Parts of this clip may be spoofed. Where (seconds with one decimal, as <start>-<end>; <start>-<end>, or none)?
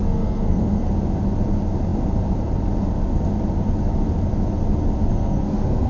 0.0-0.9; 5.1-5.9